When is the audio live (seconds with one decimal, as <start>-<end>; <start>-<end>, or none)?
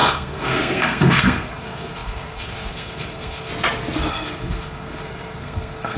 3.5-4.1